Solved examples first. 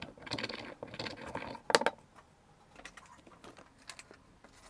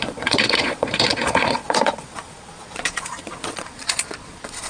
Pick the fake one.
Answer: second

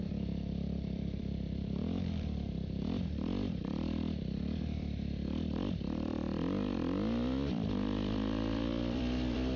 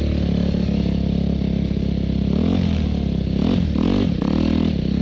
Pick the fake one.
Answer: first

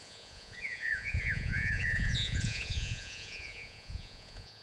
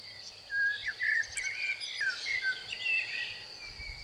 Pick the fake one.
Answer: first